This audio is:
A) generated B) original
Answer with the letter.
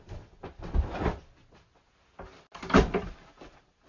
B